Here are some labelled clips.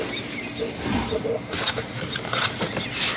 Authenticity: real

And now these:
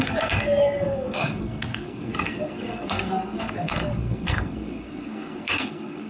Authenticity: fake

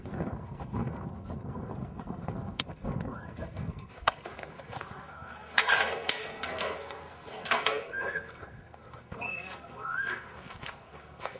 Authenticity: fake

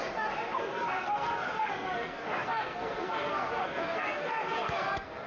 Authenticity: fake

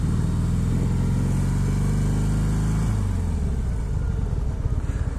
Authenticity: real